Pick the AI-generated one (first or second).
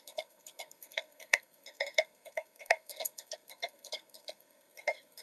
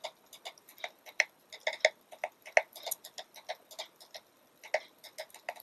first